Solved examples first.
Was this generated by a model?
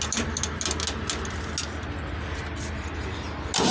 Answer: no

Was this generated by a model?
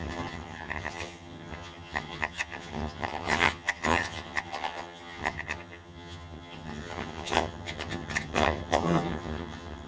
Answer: yes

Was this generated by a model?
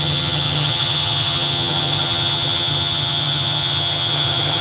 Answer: yes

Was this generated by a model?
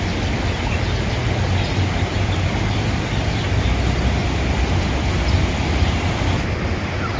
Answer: no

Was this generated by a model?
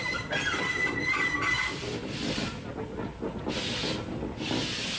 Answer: no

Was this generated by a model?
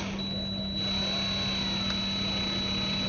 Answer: no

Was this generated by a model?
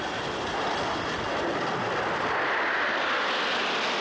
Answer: no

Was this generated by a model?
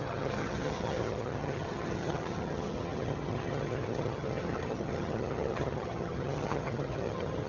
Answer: yes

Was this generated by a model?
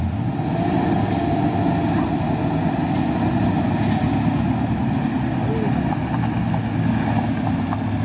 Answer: no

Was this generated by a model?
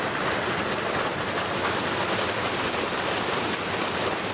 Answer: no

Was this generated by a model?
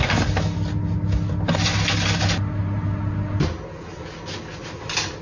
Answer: no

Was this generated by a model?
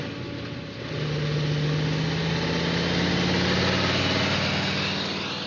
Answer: no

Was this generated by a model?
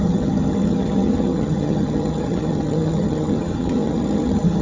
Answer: yes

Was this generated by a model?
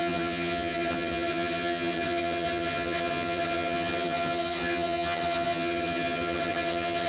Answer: yes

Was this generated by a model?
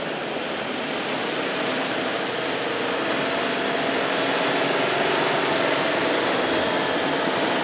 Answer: no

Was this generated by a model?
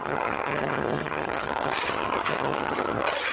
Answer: yes